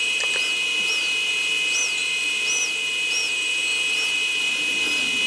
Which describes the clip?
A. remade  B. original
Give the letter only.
A